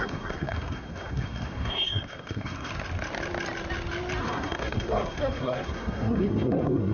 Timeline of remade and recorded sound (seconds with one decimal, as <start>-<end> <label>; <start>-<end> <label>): 0.0-2.7 remade; 2.7-4.2 recorded; 4.2-6.9 remade